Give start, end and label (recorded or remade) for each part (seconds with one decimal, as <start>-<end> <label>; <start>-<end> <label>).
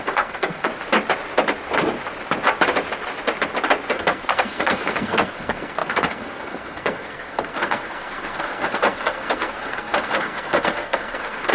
0.0-0.7 remade; 0.7-3.9 recorded; 3.9-11.5 remade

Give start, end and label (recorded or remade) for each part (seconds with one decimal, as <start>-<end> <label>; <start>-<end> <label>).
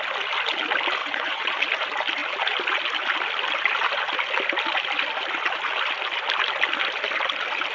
0.0-1.0 recorded; 1.0-1.6 remade; 1.6-7.7 recorded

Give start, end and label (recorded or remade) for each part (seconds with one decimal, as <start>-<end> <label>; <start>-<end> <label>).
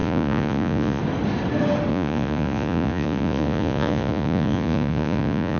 0.0-1.0 remade; 1.0-1.9 recorded; 1.9-5.6 remade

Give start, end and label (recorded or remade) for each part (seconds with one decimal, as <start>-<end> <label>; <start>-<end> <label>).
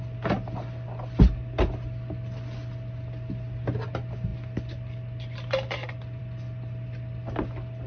0.0-7.9 recorded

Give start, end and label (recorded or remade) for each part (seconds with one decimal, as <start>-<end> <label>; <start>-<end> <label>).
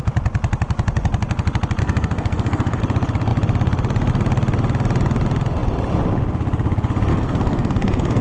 0.0-1.8 recorded; 1.8-2.8 remade; 2.8-7.1 recorded; 7.1-8.2 remade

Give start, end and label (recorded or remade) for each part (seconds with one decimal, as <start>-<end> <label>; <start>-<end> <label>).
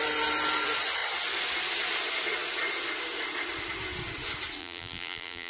0.0-4.6 recorded; 4.6-5.5 remade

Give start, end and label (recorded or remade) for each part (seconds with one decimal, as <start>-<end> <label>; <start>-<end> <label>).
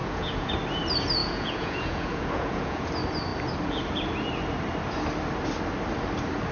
0.0-0.5 remade; 0.5-1.2 recorded; 1.2-2.9 remade; 2.9-6.5 recorded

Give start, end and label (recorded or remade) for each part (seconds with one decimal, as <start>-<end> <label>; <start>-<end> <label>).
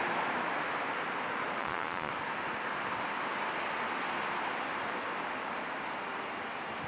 0.0-1.6 recorded; 1.6-2.1 remade; 2.1-6.9 recorded